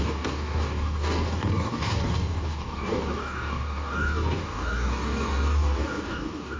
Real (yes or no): no